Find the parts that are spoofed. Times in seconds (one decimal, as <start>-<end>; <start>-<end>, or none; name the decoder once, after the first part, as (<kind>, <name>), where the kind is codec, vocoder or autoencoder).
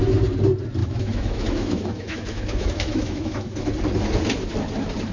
0.8-3.7 (autoencoder, DAC-VAE)